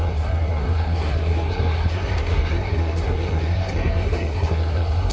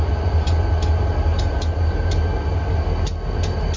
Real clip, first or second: second